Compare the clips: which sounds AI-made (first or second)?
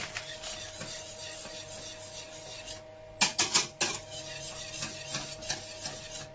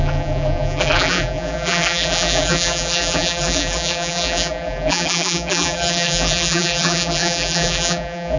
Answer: second